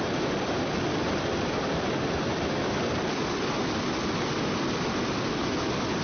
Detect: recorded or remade recorded